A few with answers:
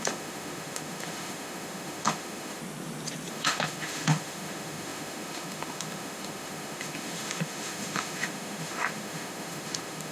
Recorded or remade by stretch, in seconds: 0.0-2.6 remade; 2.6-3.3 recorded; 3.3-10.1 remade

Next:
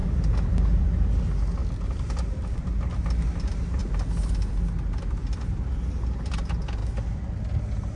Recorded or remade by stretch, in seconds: 0.0-8.0 recorded

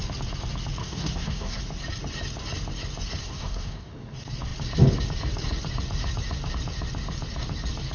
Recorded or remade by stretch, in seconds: 0.0-0.8 recorded; 0.8-1.6 remade; 1.6-3.2 recorded; 3.2-3.9 remade; 3.9-7.9 recorded

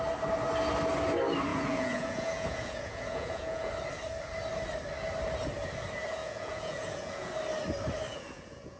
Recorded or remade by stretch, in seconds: 0.0-1.5 recorded; 1.5-3.7 remade; 3.7-6.2 recorded; 6.2-7.3 remade; 7.3-8.1 recorded; 8.1-8.8 remade

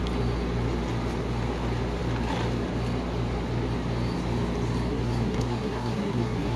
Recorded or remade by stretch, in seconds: 0.0-4.9 recorded; 4.9-6.6 remade